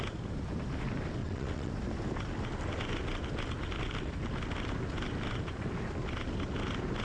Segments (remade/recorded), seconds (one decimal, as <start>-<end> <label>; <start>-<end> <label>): 0.0-1.2 recorded; 1.2-1.7 remade; 1.7-7.0 recorded

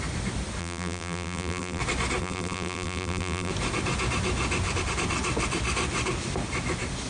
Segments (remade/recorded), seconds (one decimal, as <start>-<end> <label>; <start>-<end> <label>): 0.0-0.6 recorded; 0.6-1.8 remade; 1.8-2.2 recorded; 2.2-3.5 remade; 3.5-7.1 recorded

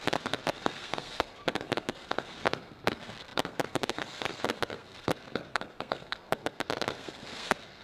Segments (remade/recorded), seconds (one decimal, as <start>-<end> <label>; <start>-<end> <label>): 0.0-7.8 remade

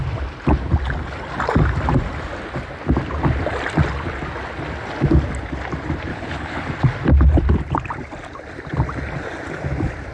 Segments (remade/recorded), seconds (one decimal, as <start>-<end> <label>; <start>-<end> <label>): 0.0-6.1 recorded; 6.1-6.7 remade; 6.7-10.1 recorded

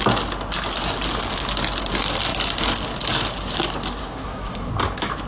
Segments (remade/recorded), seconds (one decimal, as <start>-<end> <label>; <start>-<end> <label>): 0.0-4.0 recorded; 4.0-4.7 remade; 4.7-5.3 recorded